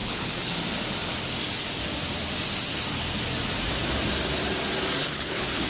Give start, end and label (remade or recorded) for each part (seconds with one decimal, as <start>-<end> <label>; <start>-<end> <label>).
0.0-0.5 remade; 0.5-5.0 recorded; 5.0-5.7 remade